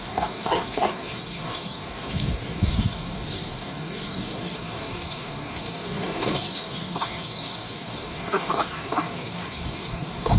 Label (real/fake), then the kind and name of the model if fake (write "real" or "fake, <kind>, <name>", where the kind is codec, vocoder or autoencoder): fake, codec, DAC